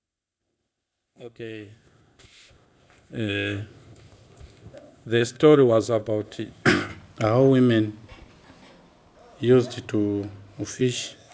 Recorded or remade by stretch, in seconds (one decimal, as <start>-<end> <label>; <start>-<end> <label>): 0.0-6.9 remade; 6.9-10.7 recorded; 10.7-11.3 remade